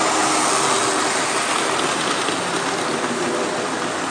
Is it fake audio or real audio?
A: real